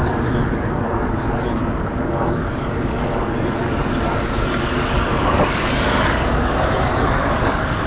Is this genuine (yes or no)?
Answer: no